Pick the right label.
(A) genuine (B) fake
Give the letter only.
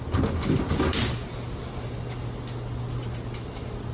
A